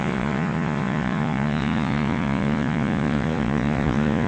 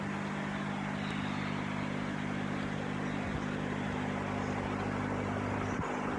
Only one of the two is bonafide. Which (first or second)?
second